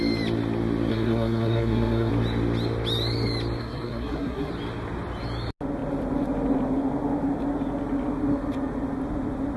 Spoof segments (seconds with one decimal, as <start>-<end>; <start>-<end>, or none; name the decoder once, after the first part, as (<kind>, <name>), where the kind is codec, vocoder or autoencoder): 0.9-2.1 (codec, SNAC); 3.6-4.5